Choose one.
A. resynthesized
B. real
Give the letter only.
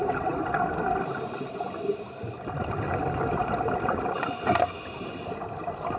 B